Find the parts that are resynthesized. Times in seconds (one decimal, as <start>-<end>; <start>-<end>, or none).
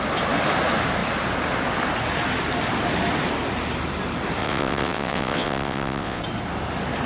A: 4.4-6.2